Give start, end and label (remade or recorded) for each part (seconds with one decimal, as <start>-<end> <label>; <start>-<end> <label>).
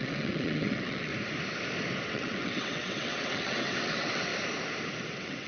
0.0-1.1 remade; 1.1-2.0 recorded; 2.0-4.3 remade; 4.3-5.0 recorded; 5.0-5.5 remade